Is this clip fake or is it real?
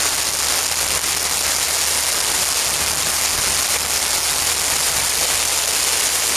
real